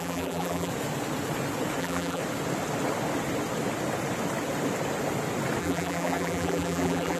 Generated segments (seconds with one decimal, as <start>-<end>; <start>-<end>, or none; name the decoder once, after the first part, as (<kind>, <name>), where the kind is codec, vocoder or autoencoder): 0.0-0.7 (vocoder, BigVGAN v2); 1.8-2.2; 5.6-7.2